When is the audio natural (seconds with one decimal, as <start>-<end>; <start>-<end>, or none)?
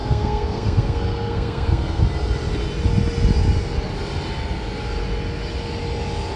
2.0-6.4